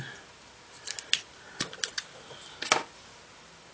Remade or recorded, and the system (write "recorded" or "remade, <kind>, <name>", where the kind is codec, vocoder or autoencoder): recorded